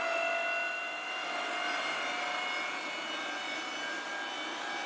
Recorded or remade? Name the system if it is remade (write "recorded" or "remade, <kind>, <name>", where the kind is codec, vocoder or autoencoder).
recorded